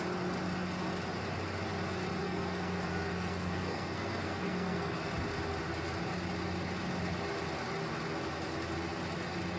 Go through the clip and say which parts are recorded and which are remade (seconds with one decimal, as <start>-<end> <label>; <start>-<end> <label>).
0.0-2.2 recorded; 2.2-5.1 remade; 5.1-9.6 recorded

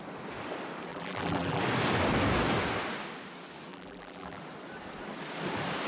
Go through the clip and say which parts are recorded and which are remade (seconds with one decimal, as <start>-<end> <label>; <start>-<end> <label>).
0.0-0.9 recorded; 0.9-1.6 remade; 1.6-3.7 recorded; 3.7-4.4 remade; 4.4-5.9 recorded

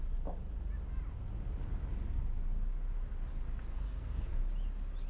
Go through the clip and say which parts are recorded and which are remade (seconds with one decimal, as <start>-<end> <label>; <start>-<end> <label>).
0.0-3.7 recorded; 3.7-4.4 remade; 4.4-5.1 recorded

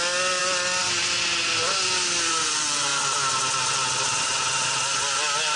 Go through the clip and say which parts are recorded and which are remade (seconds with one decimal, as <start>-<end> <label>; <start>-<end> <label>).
0.0-5.6 recorded

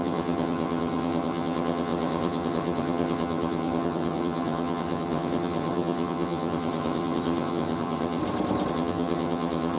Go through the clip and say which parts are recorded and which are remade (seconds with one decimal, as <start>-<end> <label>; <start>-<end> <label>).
0.0-8.2 remade; 8.2-8.7 recorded; 8.7-9.8 remade

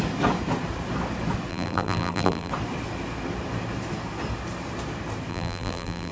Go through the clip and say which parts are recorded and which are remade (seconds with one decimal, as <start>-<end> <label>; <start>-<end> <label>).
0.0-1.5 recorded; 1.5-2.5 remade; 2.5-5.3 recorded; 5.3-6.1 remade

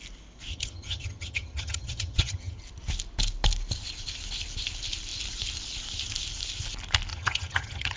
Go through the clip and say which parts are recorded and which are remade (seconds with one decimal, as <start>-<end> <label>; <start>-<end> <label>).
0.0-0.5 recorded; 0.5-2.6 remade; 2.6-7.1 recorded; 7.1-8.0 remade

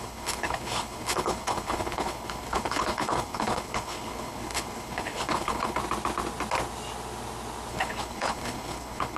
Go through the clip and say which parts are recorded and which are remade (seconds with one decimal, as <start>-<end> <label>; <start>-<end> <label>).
0.0-5.8 remade; 5.8-7.7 recorded; 7.7-9.2 remade